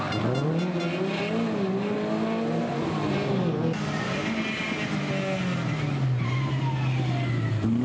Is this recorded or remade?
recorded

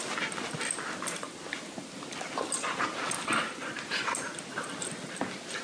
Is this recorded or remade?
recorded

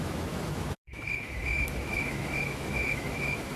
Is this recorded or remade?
remade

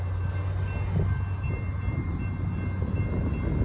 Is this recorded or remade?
recorded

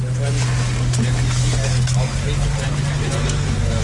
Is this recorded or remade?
recorded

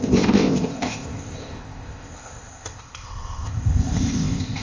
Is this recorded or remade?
remade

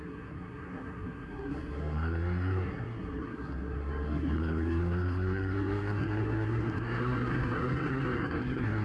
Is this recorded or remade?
remade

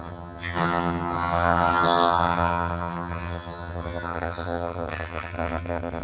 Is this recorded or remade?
remade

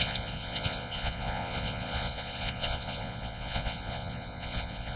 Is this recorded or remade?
remade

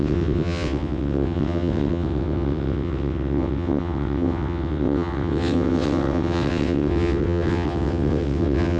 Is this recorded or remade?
remade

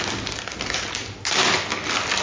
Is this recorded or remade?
recorded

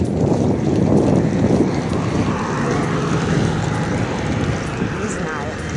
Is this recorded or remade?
recorded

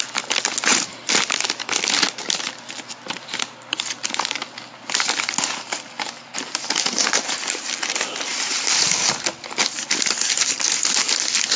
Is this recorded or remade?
recorded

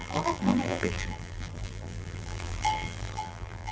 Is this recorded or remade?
remade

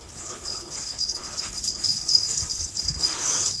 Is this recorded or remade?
remade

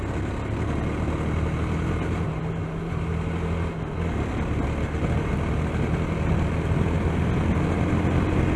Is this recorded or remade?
recorded